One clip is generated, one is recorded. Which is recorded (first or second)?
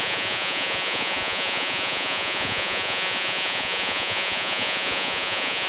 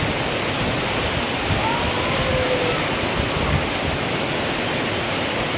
second